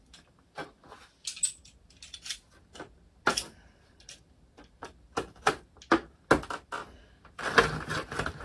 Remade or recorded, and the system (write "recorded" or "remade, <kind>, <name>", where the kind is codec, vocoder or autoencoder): recorded